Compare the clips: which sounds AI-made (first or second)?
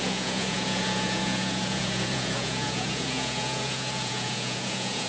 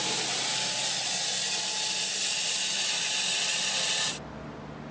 first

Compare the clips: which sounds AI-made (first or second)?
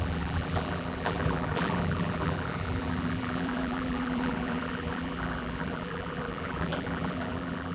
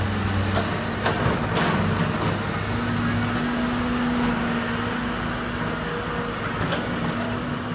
first